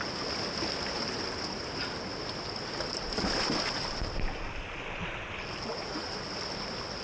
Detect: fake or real real